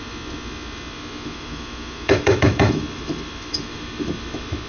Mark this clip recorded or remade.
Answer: remade